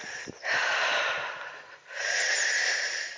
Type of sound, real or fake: real